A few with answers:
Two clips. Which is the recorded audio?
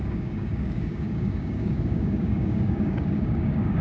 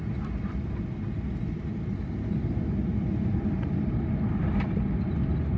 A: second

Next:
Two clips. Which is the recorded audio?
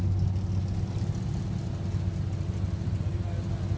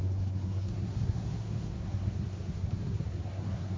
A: first